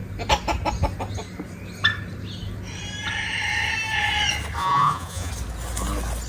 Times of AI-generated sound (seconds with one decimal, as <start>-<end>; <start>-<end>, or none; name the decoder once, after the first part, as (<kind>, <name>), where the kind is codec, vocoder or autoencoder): 4.6-5.3 (vocoder, Vocos)